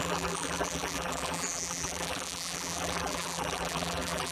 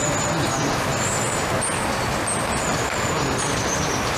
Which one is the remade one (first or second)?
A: first